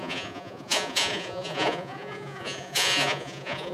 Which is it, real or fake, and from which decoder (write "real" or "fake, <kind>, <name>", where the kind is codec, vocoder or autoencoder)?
fake, vocoder, Vocos